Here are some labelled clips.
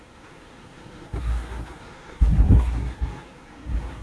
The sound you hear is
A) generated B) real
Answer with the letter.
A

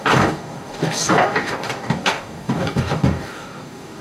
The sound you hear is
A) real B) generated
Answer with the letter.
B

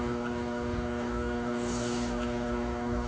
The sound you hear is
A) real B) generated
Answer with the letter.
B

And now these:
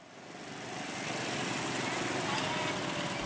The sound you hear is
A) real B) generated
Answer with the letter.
A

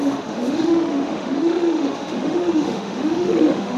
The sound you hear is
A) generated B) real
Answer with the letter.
A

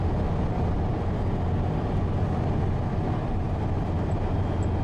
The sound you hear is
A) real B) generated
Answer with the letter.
A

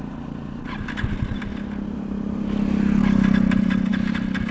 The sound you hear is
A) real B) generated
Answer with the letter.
A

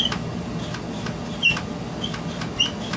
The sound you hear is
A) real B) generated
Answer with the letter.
A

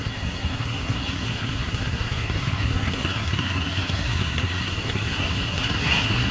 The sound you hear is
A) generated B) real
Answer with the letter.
A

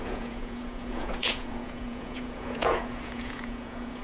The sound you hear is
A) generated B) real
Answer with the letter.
A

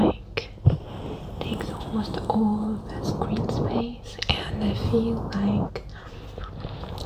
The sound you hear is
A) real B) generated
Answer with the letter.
A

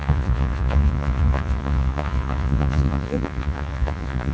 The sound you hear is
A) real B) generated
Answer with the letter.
B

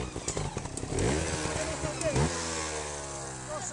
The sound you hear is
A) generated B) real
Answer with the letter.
B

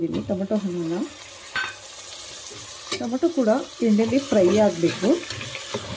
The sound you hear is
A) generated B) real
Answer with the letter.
B